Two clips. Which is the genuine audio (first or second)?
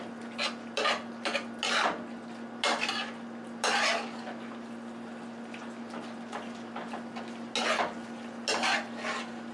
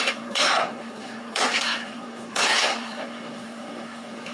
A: first